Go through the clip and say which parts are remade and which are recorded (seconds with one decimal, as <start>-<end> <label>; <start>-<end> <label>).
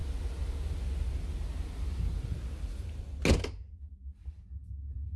0.0-5.2 recorded